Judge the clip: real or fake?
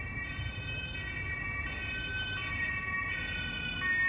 real